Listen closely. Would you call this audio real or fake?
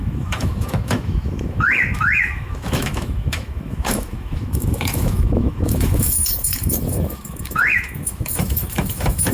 fake